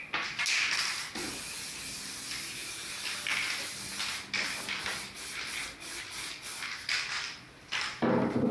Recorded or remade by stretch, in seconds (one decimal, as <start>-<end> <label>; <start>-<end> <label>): 0.0-8.5 recorded